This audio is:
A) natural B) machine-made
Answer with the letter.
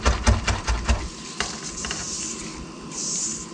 A